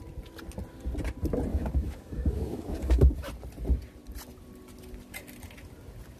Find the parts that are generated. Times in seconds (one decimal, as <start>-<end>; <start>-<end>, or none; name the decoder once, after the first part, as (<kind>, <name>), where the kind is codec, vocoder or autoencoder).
1.5-3.1 (codec, DAC)